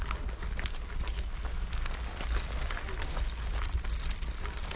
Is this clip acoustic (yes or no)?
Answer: yes